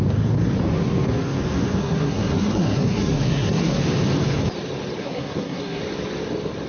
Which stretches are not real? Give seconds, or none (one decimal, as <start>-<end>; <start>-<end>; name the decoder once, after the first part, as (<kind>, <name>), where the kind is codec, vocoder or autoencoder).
1.8-3.8 (codec, SNAC); 5.0-5.8